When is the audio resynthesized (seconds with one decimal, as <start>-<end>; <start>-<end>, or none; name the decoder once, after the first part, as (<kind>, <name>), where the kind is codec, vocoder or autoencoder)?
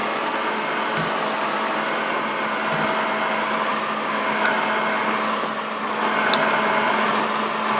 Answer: none